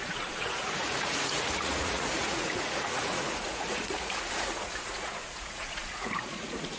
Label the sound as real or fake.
fake